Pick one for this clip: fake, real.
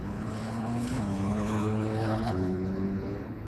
fake